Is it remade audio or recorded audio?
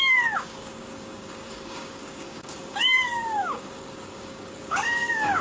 remade